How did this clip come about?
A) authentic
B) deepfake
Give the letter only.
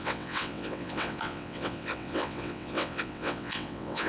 B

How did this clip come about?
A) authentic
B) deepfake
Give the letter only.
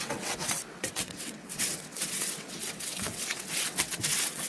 B